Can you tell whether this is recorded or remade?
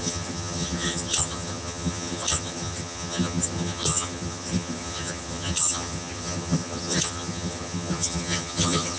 remade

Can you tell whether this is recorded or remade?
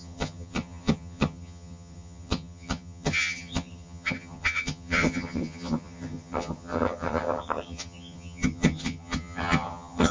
remade